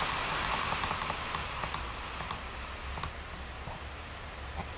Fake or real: real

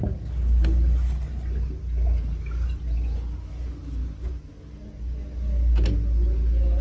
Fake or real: real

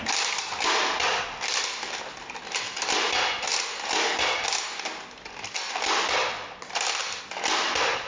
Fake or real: real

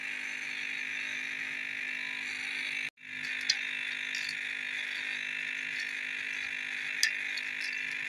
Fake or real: real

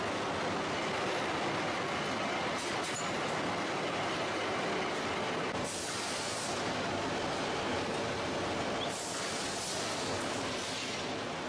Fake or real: real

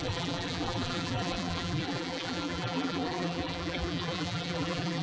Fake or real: fake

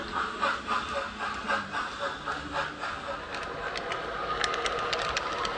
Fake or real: real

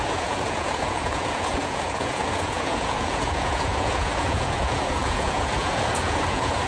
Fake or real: fake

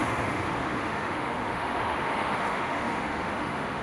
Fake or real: fake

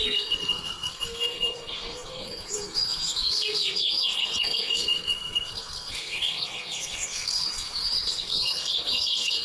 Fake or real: fake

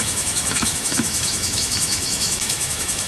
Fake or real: fake